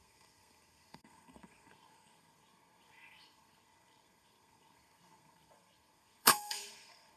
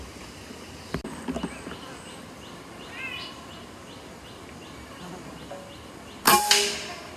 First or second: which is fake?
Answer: first